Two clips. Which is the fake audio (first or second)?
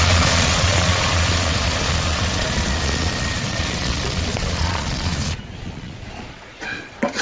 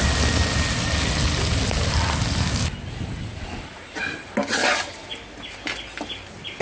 first